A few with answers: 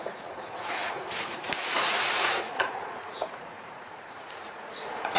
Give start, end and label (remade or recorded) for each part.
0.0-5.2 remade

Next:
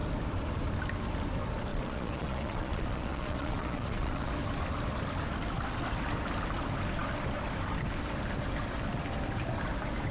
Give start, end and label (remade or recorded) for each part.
0.0-1.7 recorded; 1.7-4.3 remade; 4.3-10.1 recorded